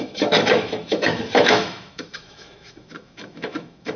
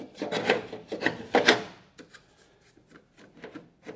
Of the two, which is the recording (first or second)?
second